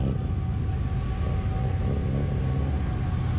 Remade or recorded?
recorded